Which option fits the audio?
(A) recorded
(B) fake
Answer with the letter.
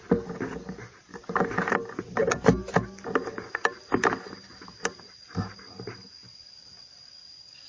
A